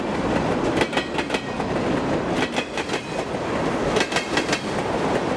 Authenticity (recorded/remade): recorded